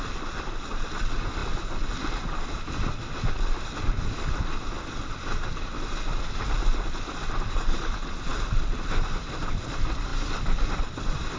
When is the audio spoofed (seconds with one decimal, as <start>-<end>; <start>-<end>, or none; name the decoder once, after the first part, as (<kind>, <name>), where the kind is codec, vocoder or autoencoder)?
none